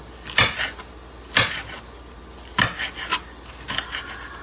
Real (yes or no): yes